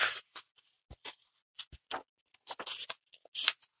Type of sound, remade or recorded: recorded